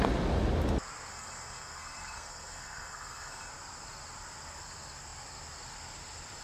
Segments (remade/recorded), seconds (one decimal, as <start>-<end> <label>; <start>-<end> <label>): 0.0-1.1 recorded; 1.1-3.5 remade; 3.5-6.4 recorded